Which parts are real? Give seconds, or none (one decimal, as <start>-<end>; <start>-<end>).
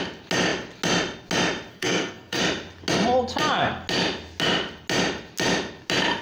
0.0-1.7; 2.4-6.2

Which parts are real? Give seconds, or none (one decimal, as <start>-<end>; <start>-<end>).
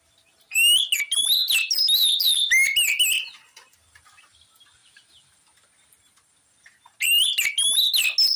0.0-8.4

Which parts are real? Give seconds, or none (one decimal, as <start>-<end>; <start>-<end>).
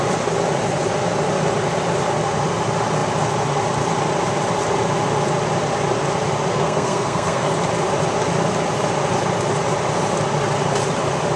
0.0-6.5; 7.5-11.4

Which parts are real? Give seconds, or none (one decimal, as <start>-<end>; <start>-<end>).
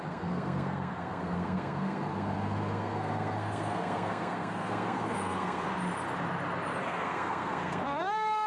5.7-6.8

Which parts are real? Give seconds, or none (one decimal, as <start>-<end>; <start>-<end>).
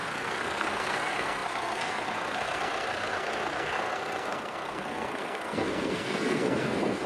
none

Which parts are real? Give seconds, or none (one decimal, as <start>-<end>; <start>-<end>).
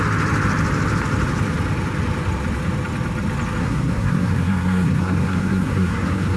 0.0-3.6